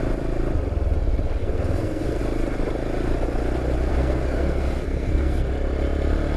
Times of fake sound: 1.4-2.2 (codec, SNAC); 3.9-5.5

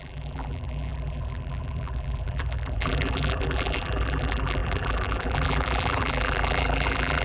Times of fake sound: 0.0-7.2 (vocoder, BigVGAN v2)

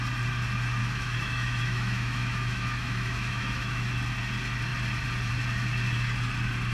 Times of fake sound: 0.8-3.9 (autoencoder, DAC-VAE)

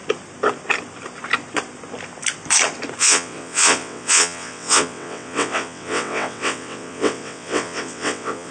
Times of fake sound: 3.0-8.5 (vocoder, WaveNeXt)

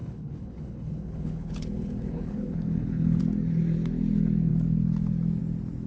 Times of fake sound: 0.0-3.2 (codec, HILCodec)

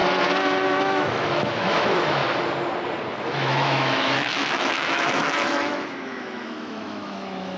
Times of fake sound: 0.7-2.2 (autoencoder, DAC-VAE); 3.1-7.6